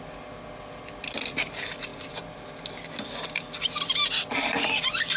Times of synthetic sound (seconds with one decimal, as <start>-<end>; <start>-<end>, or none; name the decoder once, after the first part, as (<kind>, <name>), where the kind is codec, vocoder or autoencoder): none